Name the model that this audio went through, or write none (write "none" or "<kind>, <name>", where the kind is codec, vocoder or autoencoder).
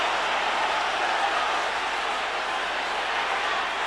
none